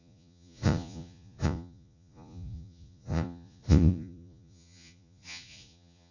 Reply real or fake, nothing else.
fake